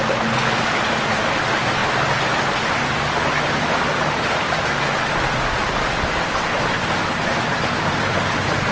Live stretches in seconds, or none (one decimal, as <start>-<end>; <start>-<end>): 0.0-8.7